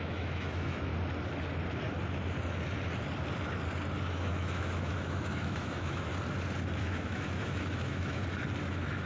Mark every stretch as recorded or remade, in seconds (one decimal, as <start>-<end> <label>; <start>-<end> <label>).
0.0-0.9 remade; 0.9-4.0 recorded; 4.0-6.1 remade; 6.1-6.8 recorded; 6.8-8.2 remade; 8.2-8.7 recorded; 8.7-9.1 remade